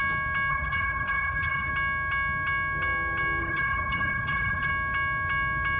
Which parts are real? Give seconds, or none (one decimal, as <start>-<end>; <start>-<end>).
0.0-0.5; 1.7-3.4; 4.7-5.8